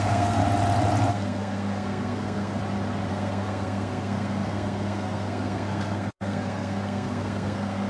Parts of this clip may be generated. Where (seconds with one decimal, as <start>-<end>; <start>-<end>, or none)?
0.0-0.4; 1.1-2.6; 3.1-7.9